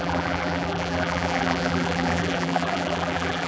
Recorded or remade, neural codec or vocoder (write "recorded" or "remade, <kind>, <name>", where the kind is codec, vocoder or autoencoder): remade, vocoder, BigVGAN v2